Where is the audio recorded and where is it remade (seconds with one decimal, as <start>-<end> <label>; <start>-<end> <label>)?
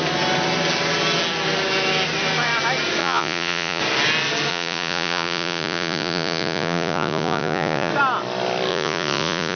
0.0-3.0 recorded; 3.0-3.8 remade; 3.8-4.5 recorded; 4.5-7.9 remade; 7.9-8.7 recorded; 8.7-9.6 remade